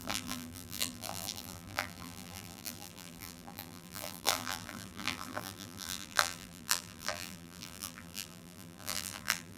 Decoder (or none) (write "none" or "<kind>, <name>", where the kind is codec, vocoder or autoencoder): vocoder, BigVGAN v2